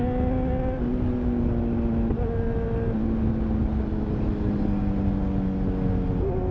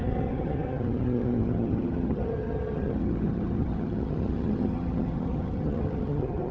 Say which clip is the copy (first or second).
second